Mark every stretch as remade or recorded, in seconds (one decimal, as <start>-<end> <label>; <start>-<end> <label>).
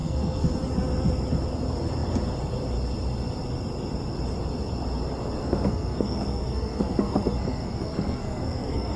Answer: 0.0-0.5 remade; 0.5-5.4 recorded; 5.4-9.0 remade